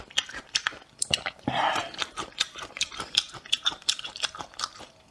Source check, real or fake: fake